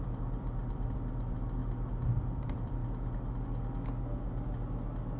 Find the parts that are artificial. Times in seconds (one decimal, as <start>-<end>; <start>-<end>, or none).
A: 0.0-1.6; 2.2-2.8